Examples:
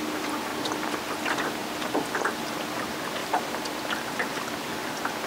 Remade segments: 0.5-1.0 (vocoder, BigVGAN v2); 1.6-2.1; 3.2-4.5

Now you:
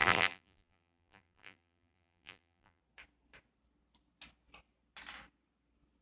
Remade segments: 0.0-2.8 (vocoder, BigVGAN v2)

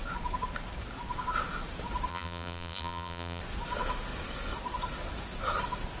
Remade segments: 2.1-3.4 (vocoder, BigVGAN v2)

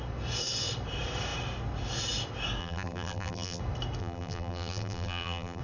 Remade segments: 2.6-3.6 (vocoder, BigVGAN v2); 4.0-5.6

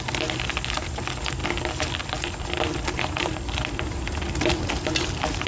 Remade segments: 1.4-4.7 (vocoder, BigVGAN v2)